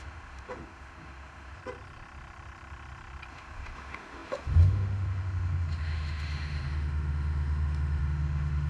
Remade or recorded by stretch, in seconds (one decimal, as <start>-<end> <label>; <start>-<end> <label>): 0.0-1.6 remade; 1.6-3.3 recorded; 3.3-8.7 remade